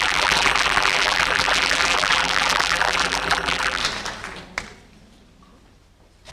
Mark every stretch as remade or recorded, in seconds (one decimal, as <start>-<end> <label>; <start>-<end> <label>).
0.0-3.8 remade; 3.8-6.3 recorded